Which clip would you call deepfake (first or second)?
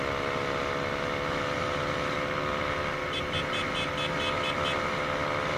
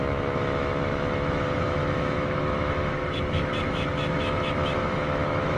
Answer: second